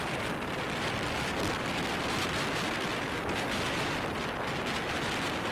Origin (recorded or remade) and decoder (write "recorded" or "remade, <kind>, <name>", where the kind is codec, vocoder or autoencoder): recorded